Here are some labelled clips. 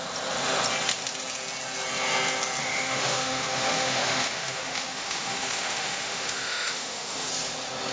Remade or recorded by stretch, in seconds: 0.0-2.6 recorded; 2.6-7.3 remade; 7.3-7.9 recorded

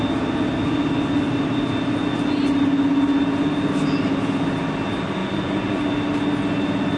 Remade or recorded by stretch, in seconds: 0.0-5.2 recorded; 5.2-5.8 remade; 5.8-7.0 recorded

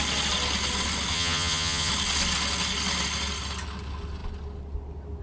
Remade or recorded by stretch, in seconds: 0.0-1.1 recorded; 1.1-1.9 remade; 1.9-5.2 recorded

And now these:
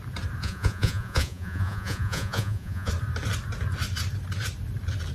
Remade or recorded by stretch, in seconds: 0.0-0.4 recorded; 0.4-2.9 remade; 2.9-5.1 recorded